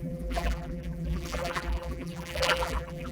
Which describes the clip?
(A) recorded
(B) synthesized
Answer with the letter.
B